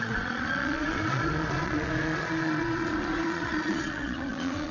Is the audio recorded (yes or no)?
no